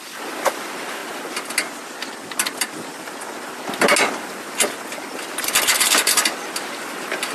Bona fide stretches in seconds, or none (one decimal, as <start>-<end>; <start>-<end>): 0.0-7.3